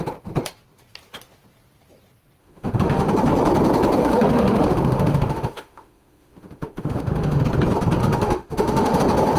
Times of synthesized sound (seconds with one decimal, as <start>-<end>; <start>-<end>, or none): 2.4-3.1; 4.0-7.4; 8.0-9.0